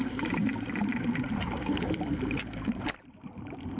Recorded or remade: remade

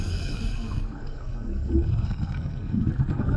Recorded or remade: remade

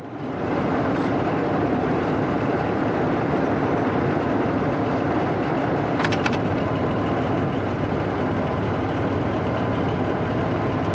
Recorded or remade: remade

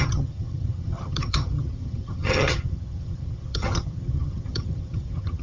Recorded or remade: remade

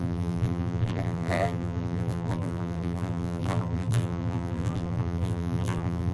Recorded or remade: remade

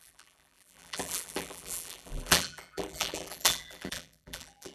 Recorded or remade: remade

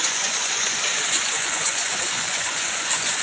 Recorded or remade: remade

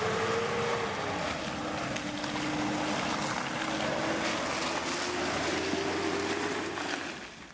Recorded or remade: recorded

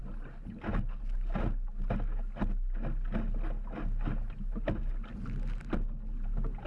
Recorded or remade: recorded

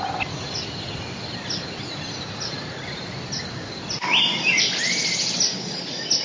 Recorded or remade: recorded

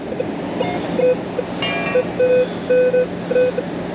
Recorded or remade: recorded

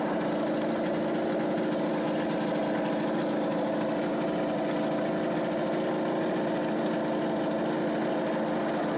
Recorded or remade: recorded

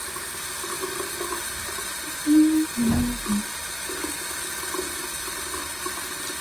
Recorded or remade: recorded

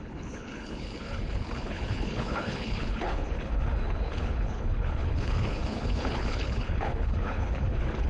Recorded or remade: remade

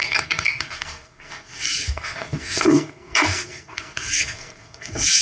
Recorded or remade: remade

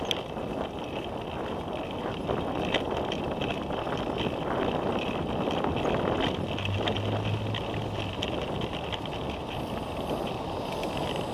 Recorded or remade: recorded